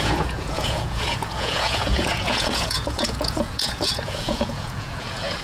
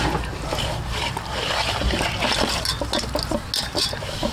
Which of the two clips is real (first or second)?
second